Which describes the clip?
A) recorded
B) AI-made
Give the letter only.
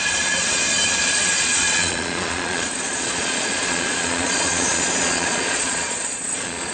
B